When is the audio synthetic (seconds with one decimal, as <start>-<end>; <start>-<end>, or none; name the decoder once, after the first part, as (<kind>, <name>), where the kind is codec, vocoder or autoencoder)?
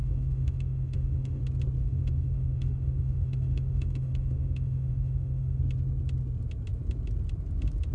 0.0-1.4 (autoencoder, DAC-VAE); 1.8-5.6